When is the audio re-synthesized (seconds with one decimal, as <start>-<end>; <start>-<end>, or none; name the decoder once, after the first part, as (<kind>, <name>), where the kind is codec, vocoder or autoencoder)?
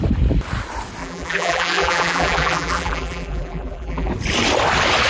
1.0-4.1 (vocoder, BigVGAN v2)